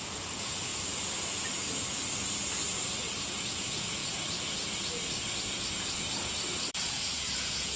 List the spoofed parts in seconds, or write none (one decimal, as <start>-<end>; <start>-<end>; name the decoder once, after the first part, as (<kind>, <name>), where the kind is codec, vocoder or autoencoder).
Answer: 0.0-0.7 (vocoder, Vocos); 3.6-4.0; 6.7-7.8